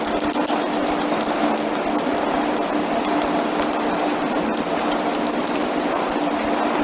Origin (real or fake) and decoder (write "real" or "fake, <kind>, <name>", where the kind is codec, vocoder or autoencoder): real